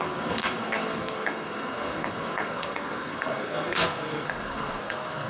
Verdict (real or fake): fake